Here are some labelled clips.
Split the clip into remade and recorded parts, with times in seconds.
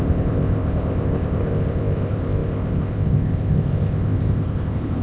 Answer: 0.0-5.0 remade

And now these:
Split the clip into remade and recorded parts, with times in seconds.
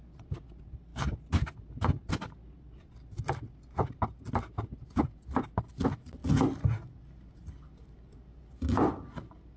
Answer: 0.0-9.6 recorded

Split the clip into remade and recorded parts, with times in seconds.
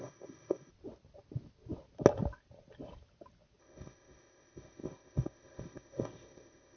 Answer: 0.0-0.7 remade; 0.7-3.6 recorded; 3.6-6.8 remade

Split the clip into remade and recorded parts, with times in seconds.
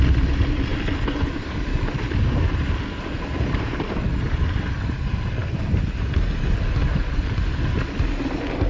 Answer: 0.0-8.7 recorded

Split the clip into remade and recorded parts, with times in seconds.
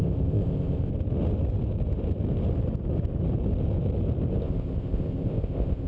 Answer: 0.0-0.9 remade; 0.9-4.4 recorded; 4.4-5.9 remade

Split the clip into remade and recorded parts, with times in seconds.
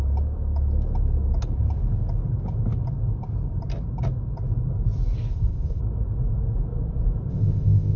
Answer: 0.0-5.3 recorded; 5.3-5.8 remade; 5.8-7.3 recorded; 7.3-8.0 remade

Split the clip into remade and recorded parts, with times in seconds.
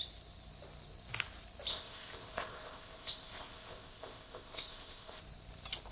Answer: 0.0-1.7 recorded; 1.7-5.2 remade; 5.2-5.9 recorded